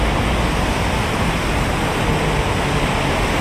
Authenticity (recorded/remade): recorded